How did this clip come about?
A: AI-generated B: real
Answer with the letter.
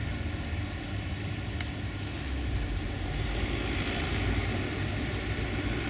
B